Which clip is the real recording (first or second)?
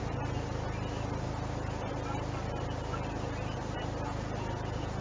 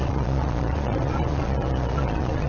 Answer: first